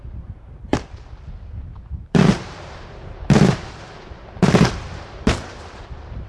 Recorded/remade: remade